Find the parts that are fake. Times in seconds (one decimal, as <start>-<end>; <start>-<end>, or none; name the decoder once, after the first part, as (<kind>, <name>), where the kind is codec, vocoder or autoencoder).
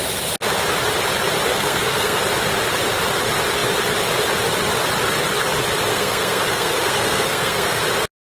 1.5-2.2 (codec, SNAC); 5.9-7.8